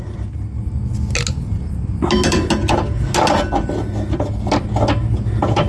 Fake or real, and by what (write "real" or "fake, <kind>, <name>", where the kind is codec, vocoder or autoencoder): real